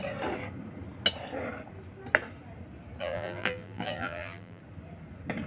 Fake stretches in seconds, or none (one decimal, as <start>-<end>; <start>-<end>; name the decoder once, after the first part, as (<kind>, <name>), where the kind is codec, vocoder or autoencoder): 3.0-4.6 (vocoder, BigVGAN v2)